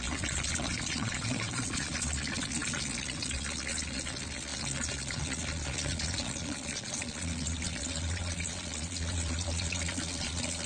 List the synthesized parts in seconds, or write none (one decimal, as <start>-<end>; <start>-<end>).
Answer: 0.0-10.7